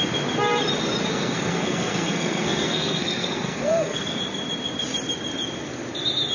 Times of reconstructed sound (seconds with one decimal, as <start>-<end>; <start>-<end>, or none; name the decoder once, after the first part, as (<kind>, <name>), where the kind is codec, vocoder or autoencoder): 1.1-4.2 (codec, SNAC)